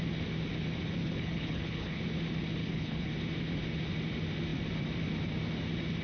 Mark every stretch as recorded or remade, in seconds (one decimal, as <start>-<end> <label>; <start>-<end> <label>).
0.0-1.0 recorded; 1.0-2.0 remade; 2.0-2.6 recorded; 2.6-3.1 remade; 3.1-6.0 recorded